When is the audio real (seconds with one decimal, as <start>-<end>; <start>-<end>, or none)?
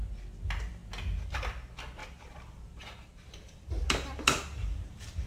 0.0-2.0